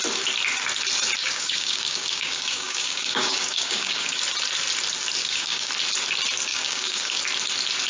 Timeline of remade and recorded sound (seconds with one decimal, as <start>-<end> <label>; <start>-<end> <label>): 0.0-1.2 recorded; 1.2-4.2 remade; 4.2-5.2 recorded; 5.2-5.7 remade; 5.7-6.5 recorded; 6.5-7.2 remade; 7.2-7.9 recorded